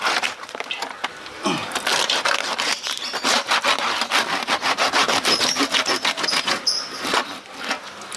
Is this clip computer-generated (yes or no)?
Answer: no